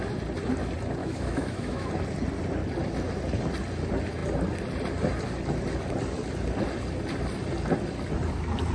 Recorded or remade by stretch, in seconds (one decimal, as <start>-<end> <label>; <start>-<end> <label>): 0.0-1.0 recorded; 1.0-1.9 remade; 1.9-8.7 recorded